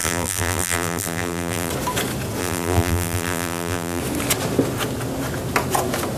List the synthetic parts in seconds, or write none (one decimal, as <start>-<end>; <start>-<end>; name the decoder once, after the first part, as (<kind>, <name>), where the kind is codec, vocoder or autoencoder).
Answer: 0.0-1.7 (vocoder, BigVGAN v2); 2.4-4.0